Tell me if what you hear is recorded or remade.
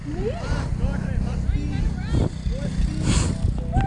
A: recorded